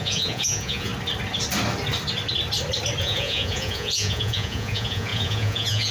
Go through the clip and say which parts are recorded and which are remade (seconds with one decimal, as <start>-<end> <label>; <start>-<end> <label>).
0.0-0.9 remade; 0.9-3.0 recorded; 3.0-5.9 remade